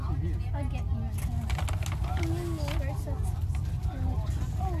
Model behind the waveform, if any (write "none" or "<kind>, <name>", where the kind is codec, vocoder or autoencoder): none